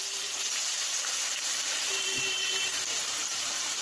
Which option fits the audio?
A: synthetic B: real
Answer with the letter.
A